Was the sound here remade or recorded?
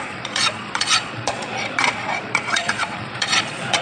remade